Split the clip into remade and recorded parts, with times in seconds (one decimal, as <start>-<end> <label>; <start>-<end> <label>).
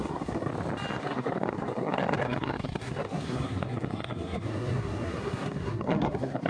0.0-0.5 remade; 0.5-1.0 recorded; 1.0-6.5 remade